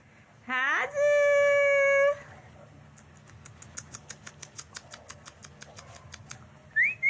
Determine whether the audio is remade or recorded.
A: recorded